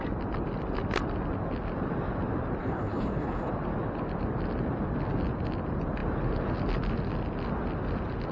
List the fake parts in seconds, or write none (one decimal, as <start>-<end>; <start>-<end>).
2.6-3.5

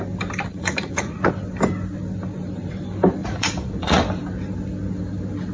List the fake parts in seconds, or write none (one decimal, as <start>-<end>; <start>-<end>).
0.5-1.3; 3.2-4.0

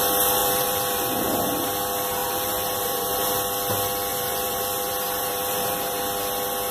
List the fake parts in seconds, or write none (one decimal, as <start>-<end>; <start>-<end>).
0.4-1.0; 2.2-3.3; 4.1-6.0